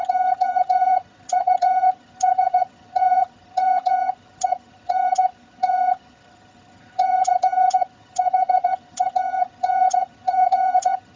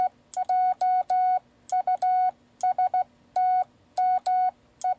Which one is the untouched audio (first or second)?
second